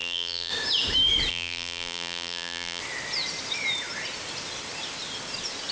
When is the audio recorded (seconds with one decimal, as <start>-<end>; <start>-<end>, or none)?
0.5-1.3; 2.8-5.7